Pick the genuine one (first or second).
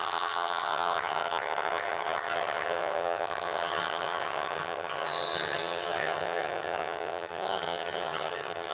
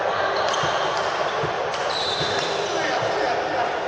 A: second